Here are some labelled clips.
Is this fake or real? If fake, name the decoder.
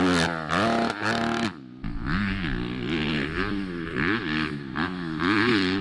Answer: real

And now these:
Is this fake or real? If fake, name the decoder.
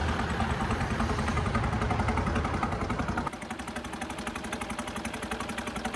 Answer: real